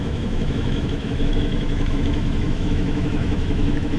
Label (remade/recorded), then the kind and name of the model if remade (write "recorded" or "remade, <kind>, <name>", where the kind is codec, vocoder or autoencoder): remade, autoencoder, DAC-VAE